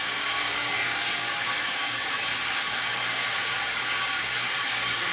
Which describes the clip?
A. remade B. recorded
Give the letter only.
A